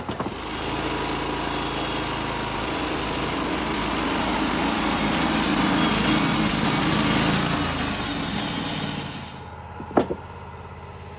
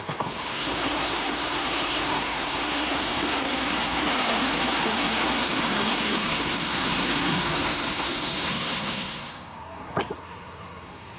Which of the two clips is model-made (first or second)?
second